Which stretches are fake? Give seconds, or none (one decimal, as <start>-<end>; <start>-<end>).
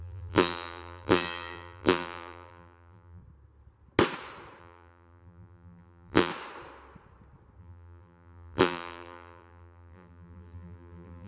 0.0-3.2; 4.6-6.3; 7.6-11.3